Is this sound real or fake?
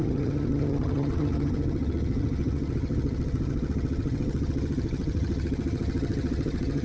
fake